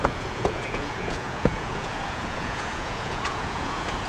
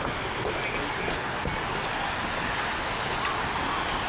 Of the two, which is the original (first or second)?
second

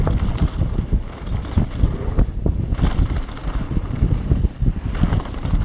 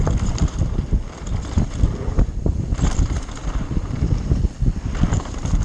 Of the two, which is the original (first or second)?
first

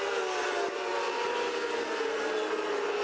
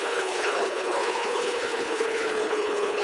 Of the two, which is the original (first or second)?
first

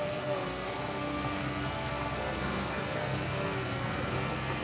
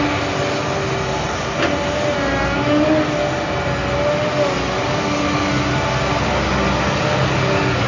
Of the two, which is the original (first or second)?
second